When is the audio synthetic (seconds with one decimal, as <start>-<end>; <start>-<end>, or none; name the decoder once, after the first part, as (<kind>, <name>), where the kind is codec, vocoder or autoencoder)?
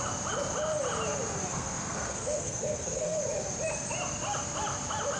1.5-3.2 (codec, SNAC)